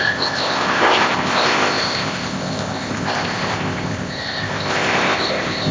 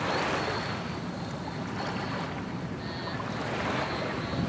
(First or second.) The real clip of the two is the second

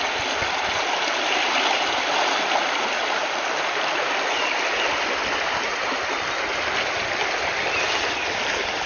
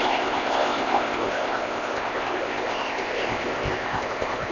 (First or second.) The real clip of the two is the first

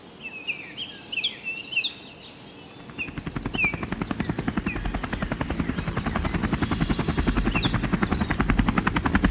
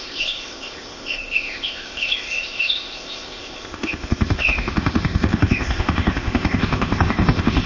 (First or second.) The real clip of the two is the first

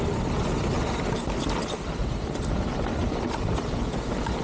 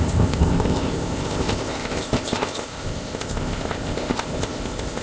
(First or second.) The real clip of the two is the first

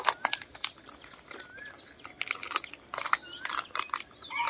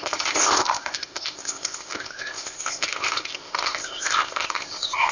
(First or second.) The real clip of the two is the first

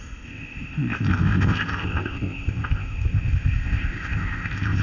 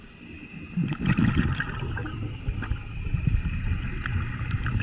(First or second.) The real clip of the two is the second